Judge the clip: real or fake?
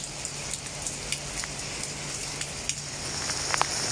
real